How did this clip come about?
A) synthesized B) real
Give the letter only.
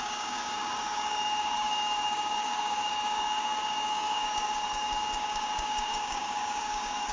A